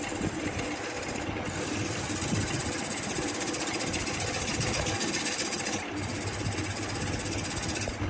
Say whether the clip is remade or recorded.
recorded